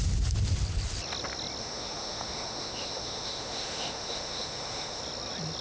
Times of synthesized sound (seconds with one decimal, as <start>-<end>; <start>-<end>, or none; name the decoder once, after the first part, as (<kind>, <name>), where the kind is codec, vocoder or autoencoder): 1.6-5.0 (autoencoder, DAC-VAE)